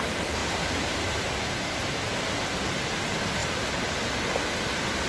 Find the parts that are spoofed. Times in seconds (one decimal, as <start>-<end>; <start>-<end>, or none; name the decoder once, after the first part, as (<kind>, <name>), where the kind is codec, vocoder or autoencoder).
0.4-1.3 (vocoder, BigVGAN v2); 3.4-4.1